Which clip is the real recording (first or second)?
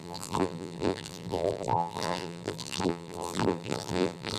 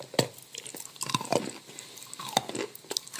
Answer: second